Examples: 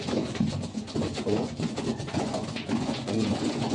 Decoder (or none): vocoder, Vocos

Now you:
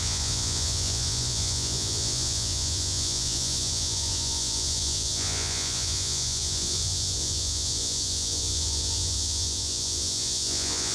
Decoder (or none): vocoder, Vocos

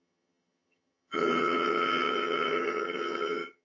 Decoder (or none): vocoder, HiFi-GAN